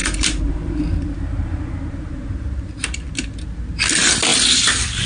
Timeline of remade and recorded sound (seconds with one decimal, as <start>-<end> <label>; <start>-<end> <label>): 0.0-3.1 remade; 3.1-5.1 recorded